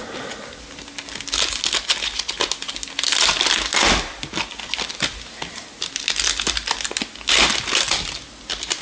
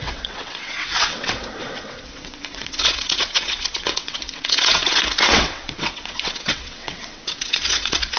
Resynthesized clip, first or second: second